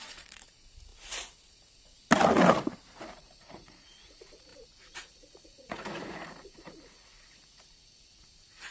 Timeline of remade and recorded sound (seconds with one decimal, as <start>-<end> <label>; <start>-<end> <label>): 0.0-1.9 remade; 1.9-3.0 recorded; 3.0-8.7 remade